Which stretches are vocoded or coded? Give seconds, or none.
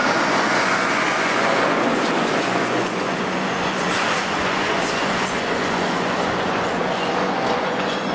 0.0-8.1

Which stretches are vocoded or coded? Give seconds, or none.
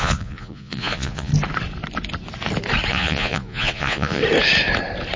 0.0-1.3; 2.9-4.2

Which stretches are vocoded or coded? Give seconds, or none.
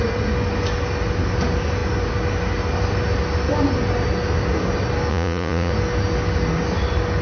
5.1-5.7